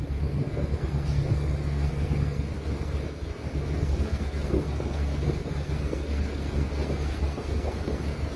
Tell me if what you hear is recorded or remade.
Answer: remade